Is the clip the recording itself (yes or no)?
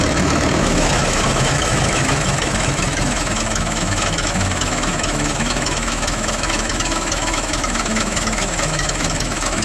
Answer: no